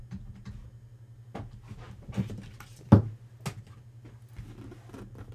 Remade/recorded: recorded